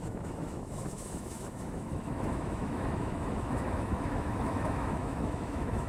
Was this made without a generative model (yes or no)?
no